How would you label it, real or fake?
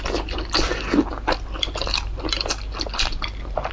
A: real